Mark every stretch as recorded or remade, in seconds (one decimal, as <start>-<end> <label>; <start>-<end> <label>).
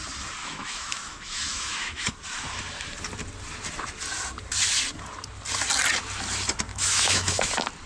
0.0-0.4 recorded; 0.4-2.1 remade; 2.1-6.7 recorded; 6.7-7.5 remade; 7.5-7.9 recorded